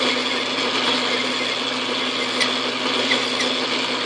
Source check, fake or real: real